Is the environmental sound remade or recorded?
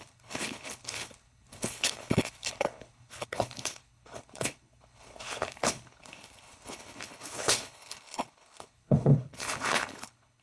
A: remade